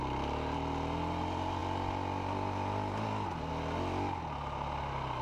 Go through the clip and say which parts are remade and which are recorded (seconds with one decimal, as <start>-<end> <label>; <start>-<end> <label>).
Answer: 0.0-5.2 recorded